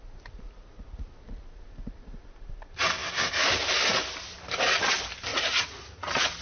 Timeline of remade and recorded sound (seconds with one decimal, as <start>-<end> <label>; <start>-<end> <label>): 0.0-5.3 recorded; 5.3-6.4 remade